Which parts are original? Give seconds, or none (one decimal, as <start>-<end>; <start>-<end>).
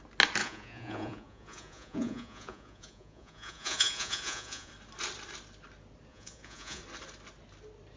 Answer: 0.0-0.4; 4.7-6.1; 6.8-8.0